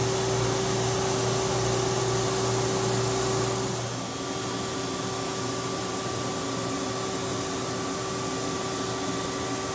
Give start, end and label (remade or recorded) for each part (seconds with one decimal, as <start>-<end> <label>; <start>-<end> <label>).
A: 0.0-9.7 recorded